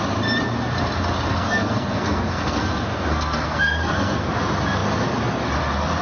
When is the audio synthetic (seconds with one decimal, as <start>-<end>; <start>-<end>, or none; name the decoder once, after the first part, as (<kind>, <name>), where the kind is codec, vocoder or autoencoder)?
1.3-4.3 (codec, SNAC)